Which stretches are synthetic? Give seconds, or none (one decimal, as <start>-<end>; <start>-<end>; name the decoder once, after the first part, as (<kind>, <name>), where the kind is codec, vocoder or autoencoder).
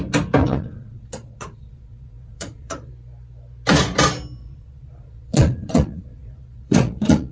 0.4-2.9 (vocoder, Vocos); 4.4-7.3